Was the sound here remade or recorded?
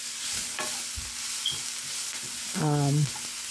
recorded